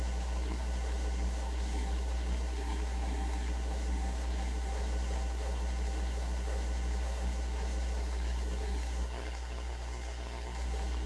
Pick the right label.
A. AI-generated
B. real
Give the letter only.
A